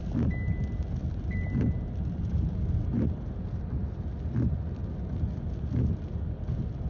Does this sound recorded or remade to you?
recorded